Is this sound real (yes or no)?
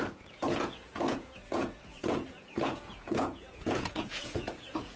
no